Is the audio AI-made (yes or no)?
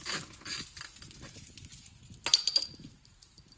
no